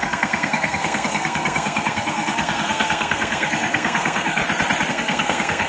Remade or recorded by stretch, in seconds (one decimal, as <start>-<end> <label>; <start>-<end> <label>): 0.0-4.4 remade; 4.4-4.9 recorded; 4.9-5.7 remade